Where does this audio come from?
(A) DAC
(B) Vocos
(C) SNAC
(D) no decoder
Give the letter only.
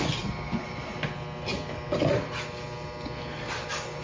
D